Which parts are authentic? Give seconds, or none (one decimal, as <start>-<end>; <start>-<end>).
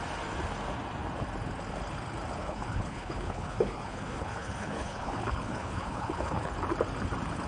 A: 0.0-2.4; 6.5-7.5